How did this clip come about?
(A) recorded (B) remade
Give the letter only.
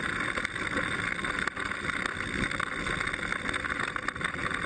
A